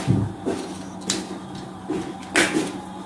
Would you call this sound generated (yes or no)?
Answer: no